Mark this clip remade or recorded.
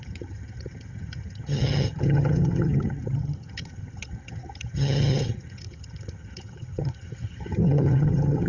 remade